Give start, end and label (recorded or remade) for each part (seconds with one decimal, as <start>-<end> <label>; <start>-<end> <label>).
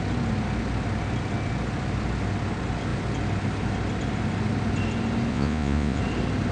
0.0-5.3 recorded; 5.3-6.0 remade; 6.0-6.5 recorded